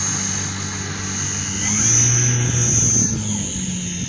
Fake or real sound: real